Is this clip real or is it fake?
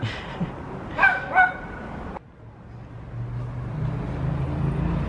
real